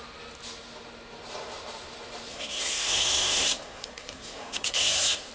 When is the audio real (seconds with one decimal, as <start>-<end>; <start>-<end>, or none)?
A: 0.0-2.3